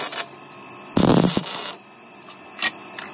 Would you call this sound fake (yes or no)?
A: no